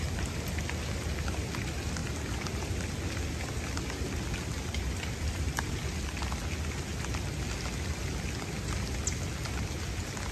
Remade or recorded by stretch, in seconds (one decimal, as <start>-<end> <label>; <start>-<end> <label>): 0.0-10.3 recorded

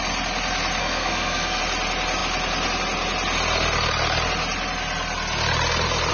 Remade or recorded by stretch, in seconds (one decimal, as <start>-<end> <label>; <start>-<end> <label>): 0.0-0.8 recorded; 0.8-1.6 remade; 1.6-6.1 recorded

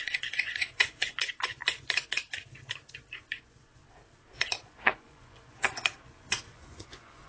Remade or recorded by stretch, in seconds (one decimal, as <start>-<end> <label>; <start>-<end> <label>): 0.0-1.6 remade; 1.6-3.1 recorded; 3.1-3.8 remade; 3.8-4.6 recorded; 4.6-7.3 remade